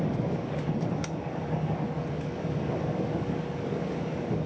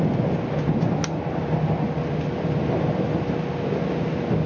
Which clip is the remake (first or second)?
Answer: first